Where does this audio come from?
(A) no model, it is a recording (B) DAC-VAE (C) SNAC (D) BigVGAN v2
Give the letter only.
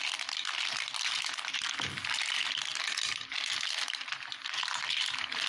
A